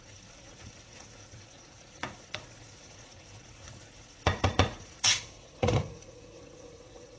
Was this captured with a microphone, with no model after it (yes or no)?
no